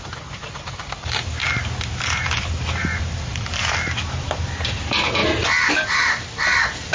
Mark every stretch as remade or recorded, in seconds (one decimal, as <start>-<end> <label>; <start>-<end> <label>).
0.0-5.2 remade; 5.2-5.7 recorded; 5.7-6.9 remade